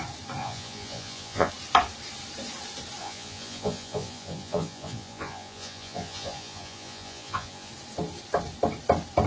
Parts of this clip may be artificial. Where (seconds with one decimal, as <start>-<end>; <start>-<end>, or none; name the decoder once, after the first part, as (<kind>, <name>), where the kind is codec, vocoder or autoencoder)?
0.4-1.5 (vocoder, Vocos); 3.0-7.7